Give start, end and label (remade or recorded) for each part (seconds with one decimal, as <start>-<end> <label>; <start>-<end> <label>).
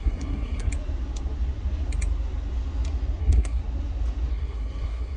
0.0-0.7 remade; 0.7-3.2 recorded; 3.2-3.6 remade; 3.6-4.3 recorded; 4.3-5.2 remade